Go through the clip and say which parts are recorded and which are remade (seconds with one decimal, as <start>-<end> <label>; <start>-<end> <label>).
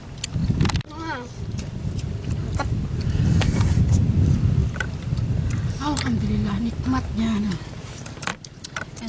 0.0-4.6 recorded; 4.6-5.6 remade; 5.6-8.3 recorded; 8.3-9.1 remade